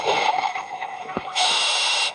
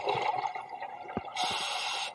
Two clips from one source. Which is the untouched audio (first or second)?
second